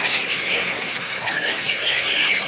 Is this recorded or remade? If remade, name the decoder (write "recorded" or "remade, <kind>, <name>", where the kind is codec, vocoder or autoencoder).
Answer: remade, codec, SNAC